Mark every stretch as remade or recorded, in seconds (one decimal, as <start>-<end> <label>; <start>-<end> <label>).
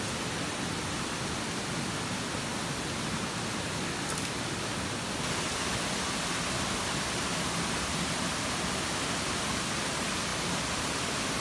0.0-11.4 recorded